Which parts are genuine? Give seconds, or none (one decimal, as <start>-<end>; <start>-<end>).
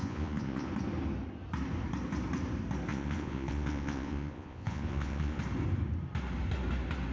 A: 0.7-2.9; 5.4-7.1